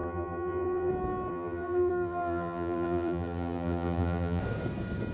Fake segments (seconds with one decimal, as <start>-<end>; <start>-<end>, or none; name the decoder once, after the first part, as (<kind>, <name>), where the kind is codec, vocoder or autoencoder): 0.0-0.9 (vocoder, BigVGAN v2); 1.3-4.4